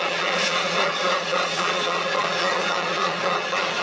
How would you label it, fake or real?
fake